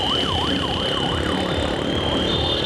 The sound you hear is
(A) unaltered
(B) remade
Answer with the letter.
A